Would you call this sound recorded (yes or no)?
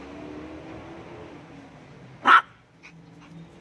yes